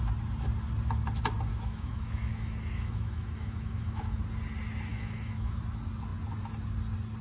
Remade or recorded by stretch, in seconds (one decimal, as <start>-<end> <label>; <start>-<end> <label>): 0.0-1.5 recorded; 1.5-4.2 remade; 4.2-4.9 recorded; 4.9-5.6 remade; 5.6-7.2 recorded